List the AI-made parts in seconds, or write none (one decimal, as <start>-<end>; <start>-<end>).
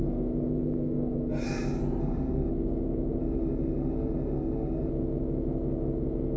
2.0-2.5; 3.2-4.9